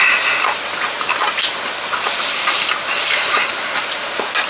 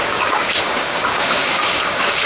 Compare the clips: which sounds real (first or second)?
first